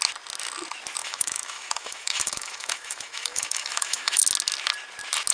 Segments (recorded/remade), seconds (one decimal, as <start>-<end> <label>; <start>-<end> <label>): 0.0-1.0 recorded; 1.0-4.2 remade; 4.2-5.3 recorded